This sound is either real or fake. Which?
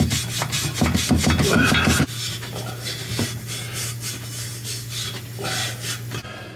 real